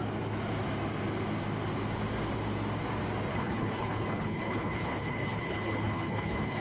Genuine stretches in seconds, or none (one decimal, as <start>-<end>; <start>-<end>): 0.0-3.3